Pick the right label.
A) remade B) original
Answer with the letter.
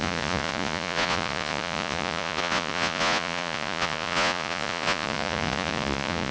A